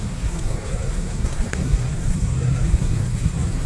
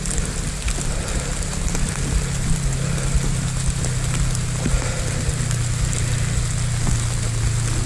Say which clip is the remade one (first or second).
first